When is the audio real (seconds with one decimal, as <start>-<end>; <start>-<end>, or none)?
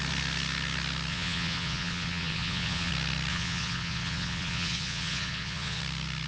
0.0-1.1; 2.9-3.3; 5.8-6.3